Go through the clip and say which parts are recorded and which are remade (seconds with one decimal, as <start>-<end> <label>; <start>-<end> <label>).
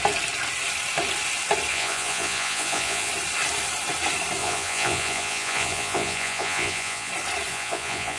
0.0-1.7 recorded; 1.7-3.1 remade; 3.1-4.4 recorded; 4.4-7.1 remade; 7.1-7.5 recorded; 7.5-8.2 remade